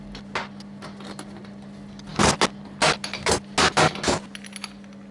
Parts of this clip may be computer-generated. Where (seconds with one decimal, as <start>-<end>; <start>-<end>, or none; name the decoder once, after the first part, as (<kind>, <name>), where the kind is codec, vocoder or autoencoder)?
none